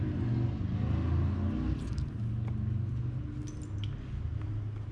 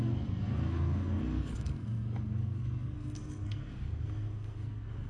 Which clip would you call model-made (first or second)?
second